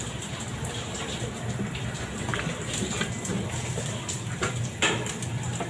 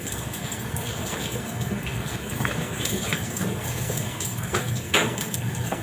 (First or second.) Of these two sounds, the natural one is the first